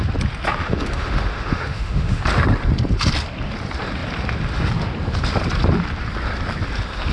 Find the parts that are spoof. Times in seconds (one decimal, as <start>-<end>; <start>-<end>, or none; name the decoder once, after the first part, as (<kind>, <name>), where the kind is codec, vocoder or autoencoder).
0.6-2.2 (autoencoder, DAC-VAE)